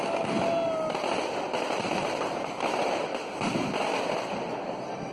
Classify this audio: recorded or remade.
recorded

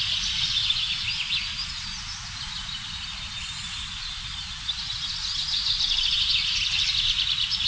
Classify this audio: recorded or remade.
recorded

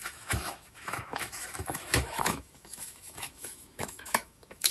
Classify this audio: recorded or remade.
remade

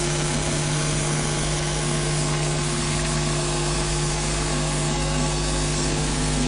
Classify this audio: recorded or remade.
remade